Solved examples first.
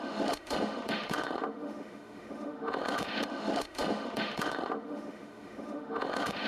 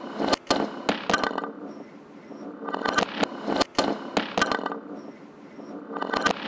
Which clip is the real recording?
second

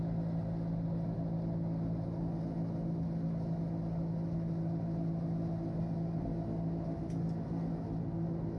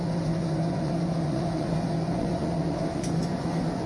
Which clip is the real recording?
first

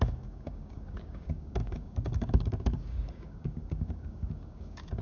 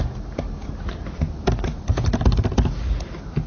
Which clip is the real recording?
second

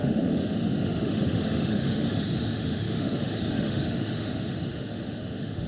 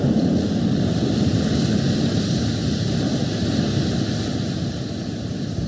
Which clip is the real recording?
second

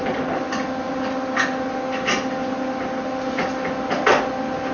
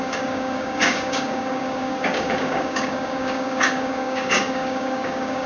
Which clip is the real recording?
first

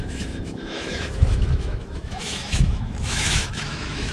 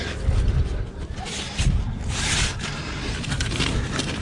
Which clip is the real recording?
second